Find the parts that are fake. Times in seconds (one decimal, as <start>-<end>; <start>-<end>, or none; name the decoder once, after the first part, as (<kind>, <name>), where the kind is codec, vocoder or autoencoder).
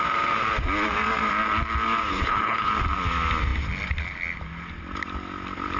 2.1-2.7 (codec, HILCodec)